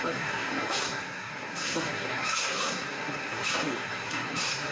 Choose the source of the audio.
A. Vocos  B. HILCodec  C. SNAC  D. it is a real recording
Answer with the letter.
C